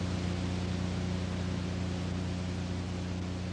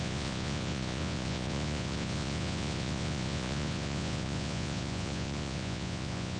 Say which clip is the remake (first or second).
second